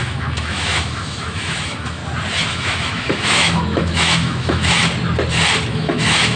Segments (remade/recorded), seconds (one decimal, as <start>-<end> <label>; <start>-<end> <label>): 0.0-2.0 remade; 2.0-2.5 recorded; 2.5-4.8 remade; 4.8-5.7 recorded; 5.7-6.4 remade